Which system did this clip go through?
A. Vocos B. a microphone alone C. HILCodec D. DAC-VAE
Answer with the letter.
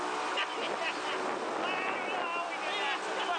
B